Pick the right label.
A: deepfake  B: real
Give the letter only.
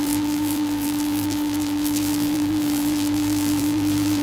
A